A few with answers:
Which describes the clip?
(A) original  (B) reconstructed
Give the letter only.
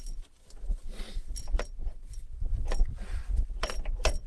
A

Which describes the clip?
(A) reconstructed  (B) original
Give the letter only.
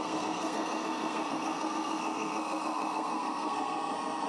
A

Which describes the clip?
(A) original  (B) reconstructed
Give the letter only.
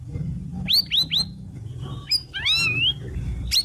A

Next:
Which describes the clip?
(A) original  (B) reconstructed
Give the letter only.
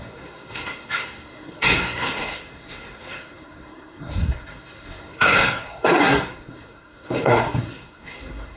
B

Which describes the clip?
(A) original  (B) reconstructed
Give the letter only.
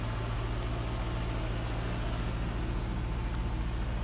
A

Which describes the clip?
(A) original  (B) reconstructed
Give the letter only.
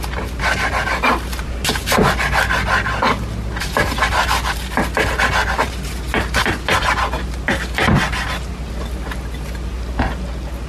A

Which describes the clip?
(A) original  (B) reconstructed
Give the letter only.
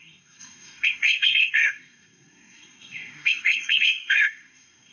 B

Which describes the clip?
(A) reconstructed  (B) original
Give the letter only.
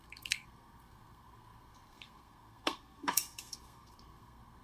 A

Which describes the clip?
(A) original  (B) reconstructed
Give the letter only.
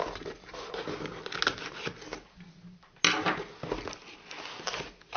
A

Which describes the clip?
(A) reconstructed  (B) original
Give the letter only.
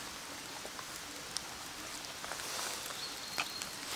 B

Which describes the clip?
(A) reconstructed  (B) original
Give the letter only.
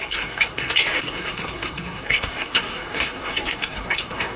A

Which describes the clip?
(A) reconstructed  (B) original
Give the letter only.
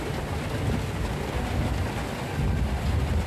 B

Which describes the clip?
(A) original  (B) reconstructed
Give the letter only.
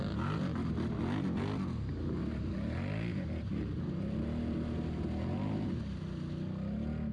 A